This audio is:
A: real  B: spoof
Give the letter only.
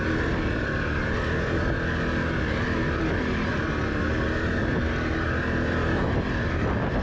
A